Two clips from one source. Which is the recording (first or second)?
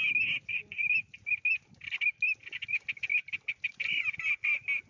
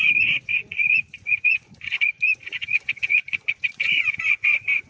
first